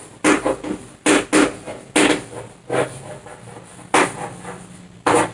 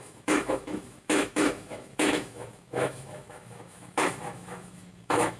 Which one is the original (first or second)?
first